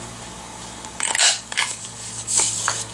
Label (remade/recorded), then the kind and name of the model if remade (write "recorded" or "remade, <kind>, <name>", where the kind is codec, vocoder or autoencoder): remade, codec, DAC